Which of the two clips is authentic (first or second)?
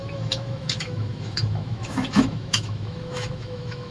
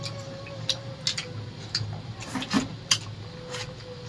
second